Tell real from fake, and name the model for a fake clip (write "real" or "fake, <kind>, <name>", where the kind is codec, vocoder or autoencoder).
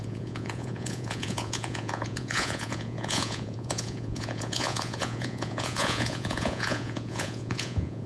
fake, vocoder, Vocos